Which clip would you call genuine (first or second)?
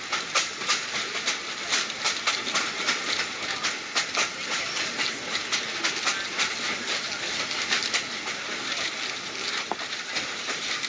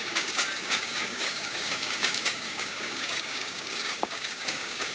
first